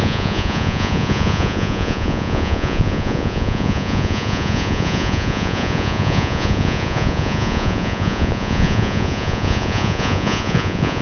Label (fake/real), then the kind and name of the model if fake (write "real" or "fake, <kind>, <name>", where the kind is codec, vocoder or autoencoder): fake, vocoder, Vocos